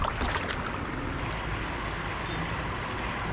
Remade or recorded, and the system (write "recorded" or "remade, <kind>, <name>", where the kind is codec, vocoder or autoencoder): recorded